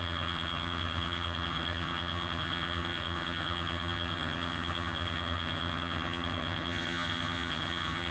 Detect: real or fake fake